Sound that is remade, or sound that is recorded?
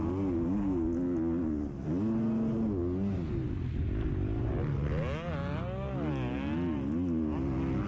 recorded